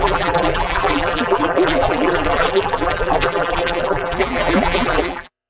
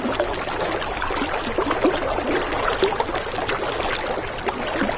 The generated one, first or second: first